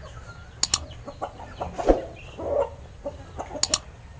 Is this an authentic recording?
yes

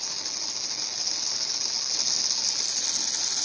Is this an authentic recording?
yes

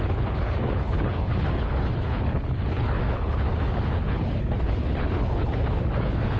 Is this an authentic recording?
no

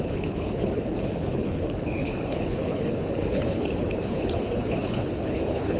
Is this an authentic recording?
no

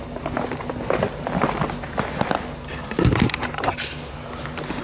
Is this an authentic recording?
yes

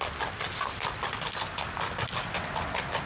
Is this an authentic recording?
yes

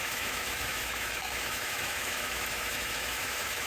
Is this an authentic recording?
no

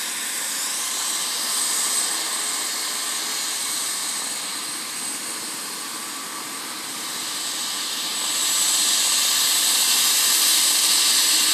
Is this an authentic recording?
yes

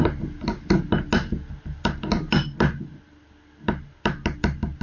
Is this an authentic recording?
yes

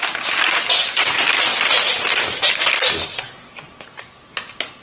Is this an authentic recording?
yes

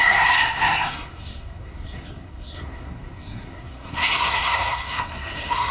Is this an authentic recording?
no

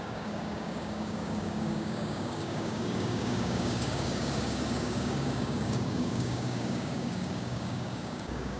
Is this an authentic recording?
no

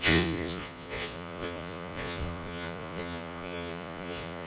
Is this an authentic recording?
no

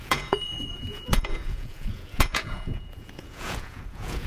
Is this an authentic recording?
no